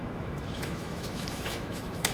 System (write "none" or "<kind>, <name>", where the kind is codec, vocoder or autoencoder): autoencoder, DAC-VAE